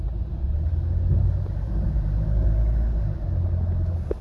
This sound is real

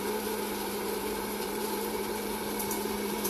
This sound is fake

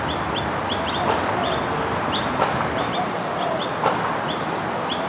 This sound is real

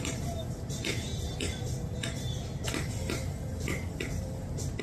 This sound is fake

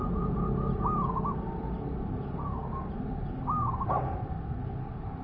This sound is real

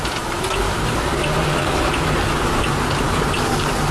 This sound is real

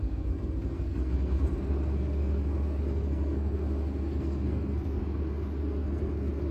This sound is fake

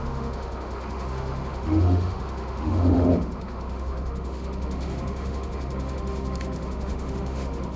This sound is fake